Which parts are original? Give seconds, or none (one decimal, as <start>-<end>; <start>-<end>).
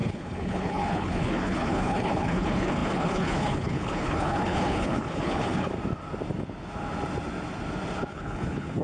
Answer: 5.7-8.1